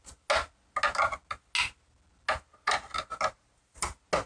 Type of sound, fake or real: real